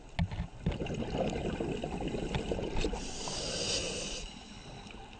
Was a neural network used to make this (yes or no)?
no